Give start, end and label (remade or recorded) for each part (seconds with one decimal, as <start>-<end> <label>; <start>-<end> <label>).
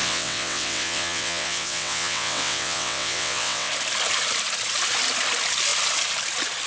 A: 0.0-3.7 remade; 3.7-6.7 recorded